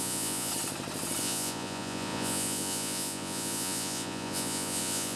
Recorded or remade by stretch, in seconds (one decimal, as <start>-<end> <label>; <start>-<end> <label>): 0.0-0.5 remade; 0.5-1.2 recorded; 1.2-5.2 remade